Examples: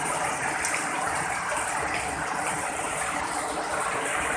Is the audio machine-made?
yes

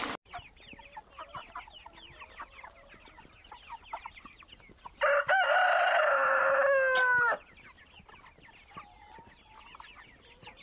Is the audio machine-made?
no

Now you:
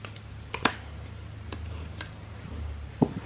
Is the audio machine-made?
yes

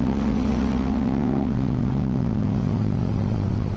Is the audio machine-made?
yes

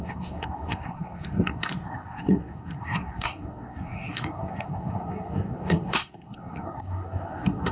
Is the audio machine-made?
yes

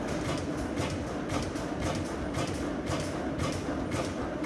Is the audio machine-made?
no